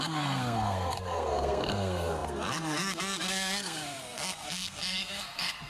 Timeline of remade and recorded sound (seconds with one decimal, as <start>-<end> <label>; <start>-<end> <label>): 0.0-5.7 remade